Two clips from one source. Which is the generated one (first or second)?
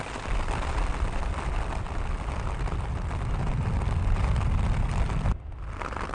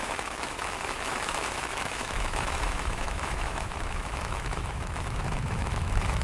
second